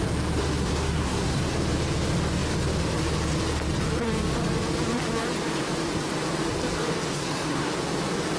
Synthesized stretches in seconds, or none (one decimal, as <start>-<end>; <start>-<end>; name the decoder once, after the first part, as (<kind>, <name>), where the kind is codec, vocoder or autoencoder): 0.4-1.4 (codec, SNAC); 7.1-7.7